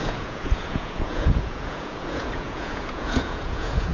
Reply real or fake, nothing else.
fake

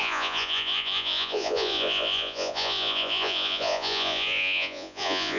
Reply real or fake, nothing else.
fake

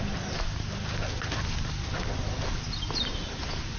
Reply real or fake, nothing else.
real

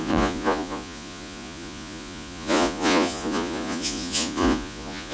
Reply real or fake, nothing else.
fake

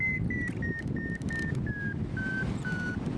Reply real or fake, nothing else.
real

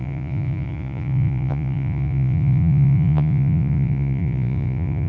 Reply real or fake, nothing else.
fake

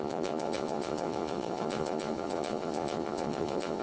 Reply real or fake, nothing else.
fake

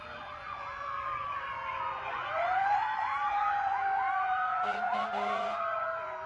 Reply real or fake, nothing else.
fake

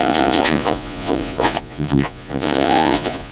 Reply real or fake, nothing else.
fake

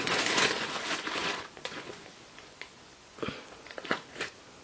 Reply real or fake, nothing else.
fake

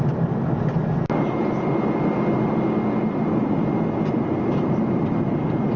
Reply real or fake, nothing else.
real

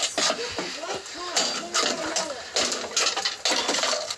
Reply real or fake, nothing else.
real